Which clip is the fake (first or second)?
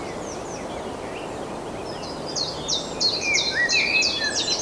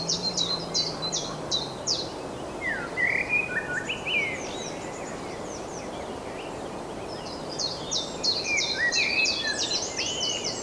second